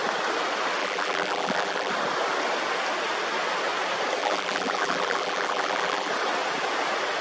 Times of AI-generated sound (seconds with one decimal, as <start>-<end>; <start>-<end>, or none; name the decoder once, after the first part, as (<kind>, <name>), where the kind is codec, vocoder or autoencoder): 0.8-1.9 (vocoder, BigVGAN v2); 4.2-6.1